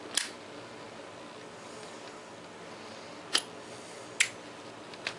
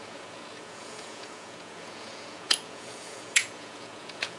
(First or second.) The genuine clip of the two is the first